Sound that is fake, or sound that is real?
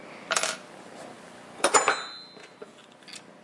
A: real